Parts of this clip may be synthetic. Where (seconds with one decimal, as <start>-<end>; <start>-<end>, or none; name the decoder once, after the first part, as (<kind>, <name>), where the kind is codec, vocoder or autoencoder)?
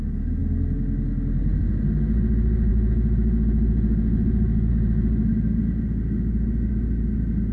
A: none